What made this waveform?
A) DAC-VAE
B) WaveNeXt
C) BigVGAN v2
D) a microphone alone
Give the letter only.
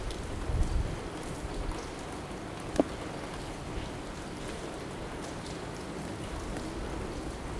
D